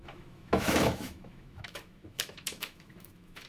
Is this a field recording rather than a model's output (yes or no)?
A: no